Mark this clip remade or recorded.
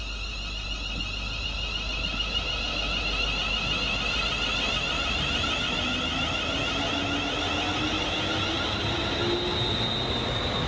recorded